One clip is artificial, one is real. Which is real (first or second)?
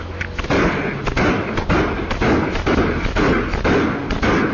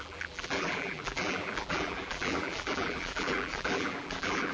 first